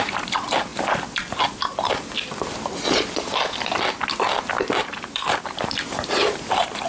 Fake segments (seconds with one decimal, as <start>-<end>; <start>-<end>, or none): 0.0-0.7; 4.8-6.9